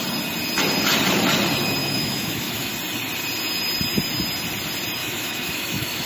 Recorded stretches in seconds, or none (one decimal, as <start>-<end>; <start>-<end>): 0.0-1.8; 2.7-5.0